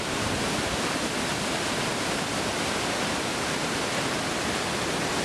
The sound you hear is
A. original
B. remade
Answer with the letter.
B